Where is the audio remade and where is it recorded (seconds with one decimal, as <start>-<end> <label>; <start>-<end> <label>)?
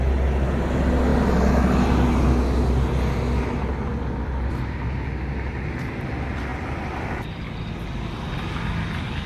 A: 0.0-9.3 recorded